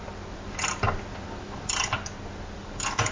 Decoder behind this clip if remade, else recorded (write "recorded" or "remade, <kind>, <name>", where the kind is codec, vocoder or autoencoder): recorded